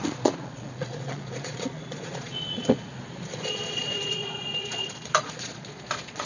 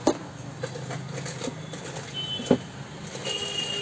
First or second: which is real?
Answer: second